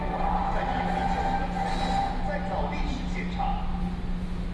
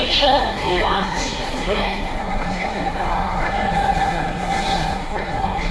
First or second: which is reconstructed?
second